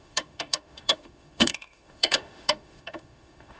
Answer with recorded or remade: remade